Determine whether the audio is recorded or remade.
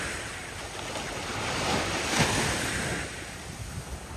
recorded